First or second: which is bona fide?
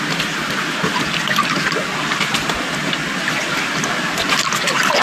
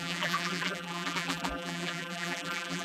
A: first